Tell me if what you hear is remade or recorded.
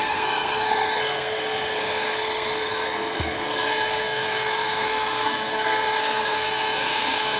remade